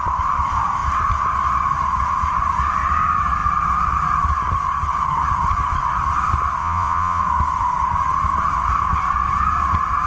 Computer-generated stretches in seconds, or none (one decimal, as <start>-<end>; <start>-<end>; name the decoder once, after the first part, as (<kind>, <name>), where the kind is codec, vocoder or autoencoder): 6.6-7.2 (vocoder, Vocos)